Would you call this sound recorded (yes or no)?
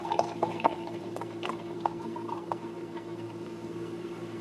no